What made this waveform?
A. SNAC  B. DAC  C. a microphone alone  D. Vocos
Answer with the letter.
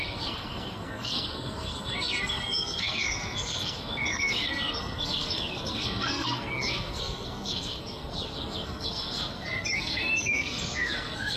A